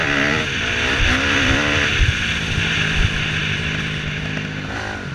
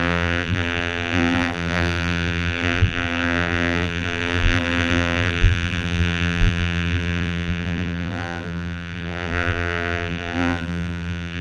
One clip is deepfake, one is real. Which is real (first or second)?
first